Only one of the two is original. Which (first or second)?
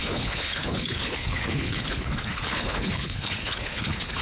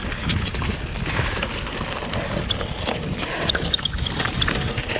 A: second